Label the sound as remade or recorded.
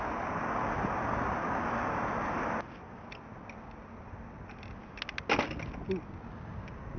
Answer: recorded